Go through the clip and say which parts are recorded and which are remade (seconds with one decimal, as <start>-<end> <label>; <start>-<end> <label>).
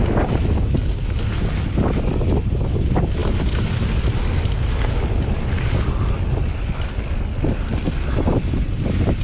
0.0-9.2 recorded